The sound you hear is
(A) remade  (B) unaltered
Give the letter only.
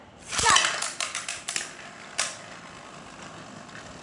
A